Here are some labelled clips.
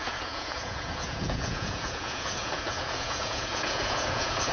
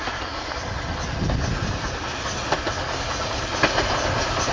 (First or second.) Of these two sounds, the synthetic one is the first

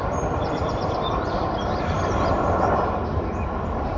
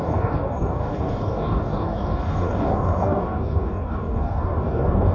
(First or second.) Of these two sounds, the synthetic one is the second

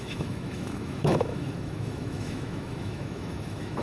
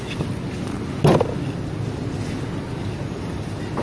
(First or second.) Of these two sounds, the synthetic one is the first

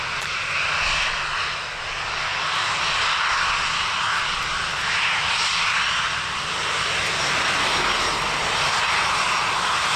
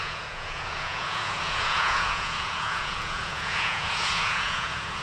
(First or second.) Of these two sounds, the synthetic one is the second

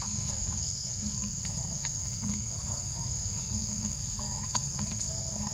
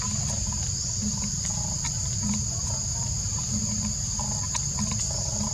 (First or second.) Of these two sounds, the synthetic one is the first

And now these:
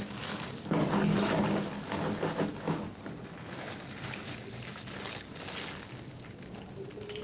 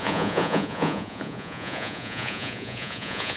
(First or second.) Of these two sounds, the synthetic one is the second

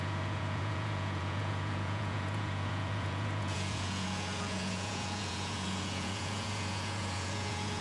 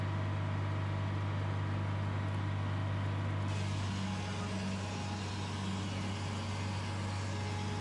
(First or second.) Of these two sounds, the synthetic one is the first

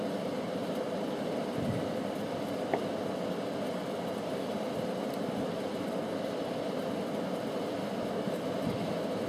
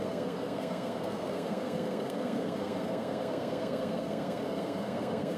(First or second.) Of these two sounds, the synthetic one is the second